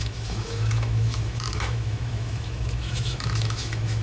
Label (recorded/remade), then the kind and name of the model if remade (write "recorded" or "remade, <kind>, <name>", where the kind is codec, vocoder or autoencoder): remade, autoencoder, DAC-VAE